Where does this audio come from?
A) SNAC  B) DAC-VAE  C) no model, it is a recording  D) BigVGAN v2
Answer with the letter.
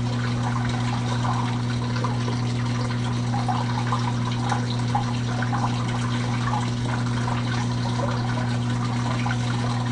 C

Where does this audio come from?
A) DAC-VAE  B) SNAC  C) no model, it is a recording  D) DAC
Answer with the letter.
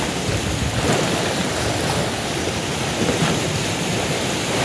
C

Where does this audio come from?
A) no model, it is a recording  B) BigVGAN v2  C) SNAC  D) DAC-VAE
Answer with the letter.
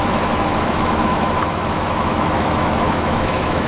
D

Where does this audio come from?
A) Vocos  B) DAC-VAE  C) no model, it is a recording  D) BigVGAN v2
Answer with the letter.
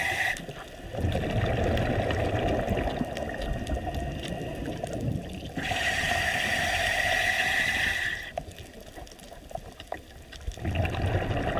C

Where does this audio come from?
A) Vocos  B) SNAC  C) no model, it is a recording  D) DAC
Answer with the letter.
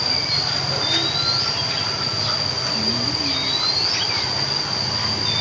C